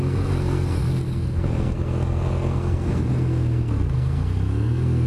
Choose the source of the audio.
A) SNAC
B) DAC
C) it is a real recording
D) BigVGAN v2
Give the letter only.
A